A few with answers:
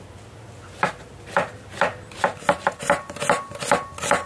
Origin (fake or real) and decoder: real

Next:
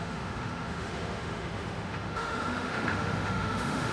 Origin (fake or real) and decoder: fake, autoencoder, DAC-VAE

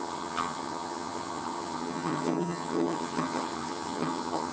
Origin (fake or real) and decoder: fake, vocoder, HiFi-GAN